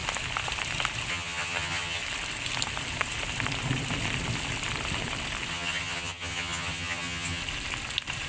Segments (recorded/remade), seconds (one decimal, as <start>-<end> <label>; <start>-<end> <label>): 0.0-1.1 recorded; 1.1-2.0 remade; 2.0-5.5 recorded; 5.5-7.4 remade; 7.4-8.3 recorded